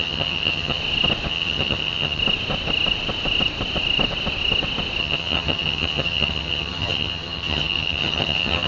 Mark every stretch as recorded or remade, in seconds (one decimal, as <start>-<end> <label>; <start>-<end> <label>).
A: 0.0-0.8 remade; 0.8-1.3 recorded; 1.3-2.2 remade; 2.2-5.0 recorded; 5.0-8.7 remade